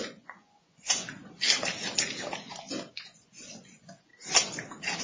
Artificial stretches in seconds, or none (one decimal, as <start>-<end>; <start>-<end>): 0.0-1.0; 2.9-4.1